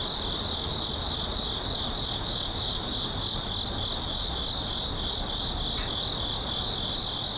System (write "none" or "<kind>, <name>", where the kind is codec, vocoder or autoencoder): none